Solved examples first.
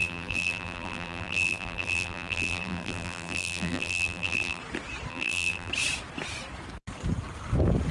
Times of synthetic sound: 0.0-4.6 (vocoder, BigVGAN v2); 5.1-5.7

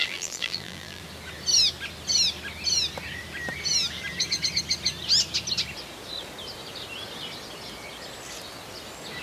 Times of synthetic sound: 0.0-1.0 (vocoder, BigVGAN v2)

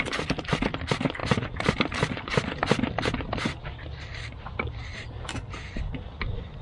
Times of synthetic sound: none

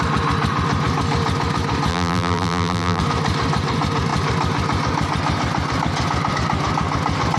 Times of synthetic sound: 1.9-3.0 (vocoder, BigVGAN v2)